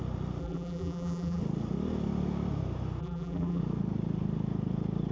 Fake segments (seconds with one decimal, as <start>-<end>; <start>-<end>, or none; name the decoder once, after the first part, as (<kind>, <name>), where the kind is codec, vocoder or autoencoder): 0.4-1.4 (vocoder, BigVGAN v2); 3.0-3.6